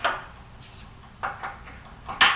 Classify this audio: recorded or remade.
recorded